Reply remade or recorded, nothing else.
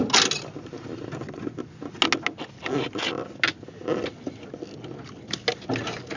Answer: recorded